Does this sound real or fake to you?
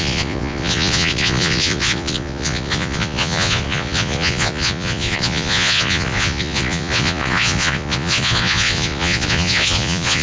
fake